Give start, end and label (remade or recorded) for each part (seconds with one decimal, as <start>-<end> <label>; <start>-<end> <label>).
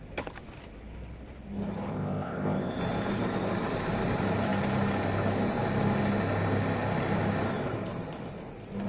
0.0-1.9 recorded; 1.9-2.8 remade; 2.8-8.9 recorded